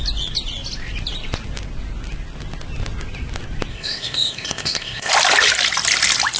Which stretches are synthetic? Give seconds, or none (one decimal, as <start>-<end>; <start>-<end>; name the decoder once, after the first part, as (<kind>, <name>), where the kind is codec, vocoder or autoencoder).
3.7-5.1 (codec, ZipCodec)

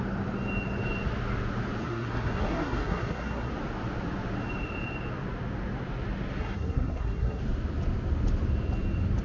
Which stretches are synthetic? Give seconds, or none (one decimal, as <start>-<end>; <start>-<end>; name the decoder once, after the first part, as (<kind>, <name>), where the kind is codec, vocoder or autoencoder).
1.8-3.5 (codec, SNAC); 6.4-7.4